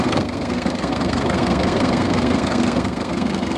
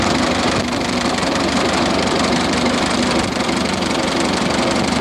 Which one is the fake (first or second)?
first